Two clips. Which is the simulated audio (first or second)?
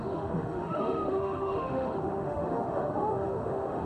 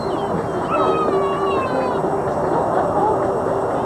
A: first